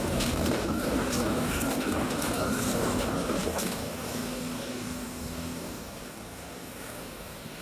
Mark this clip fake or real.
fake